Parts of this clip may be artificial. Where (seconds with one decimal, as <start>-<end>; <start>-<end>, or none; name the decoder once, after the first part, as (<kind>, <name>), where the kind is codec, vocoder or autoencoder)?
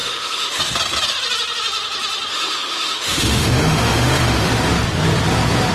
0.0-0.6 (autoencoder, DAC-VAE); 2.3-4.5